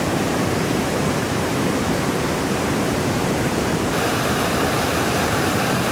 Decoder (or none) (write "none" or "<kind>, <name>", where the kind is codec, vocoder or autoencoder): vocoder, BigVGAN v2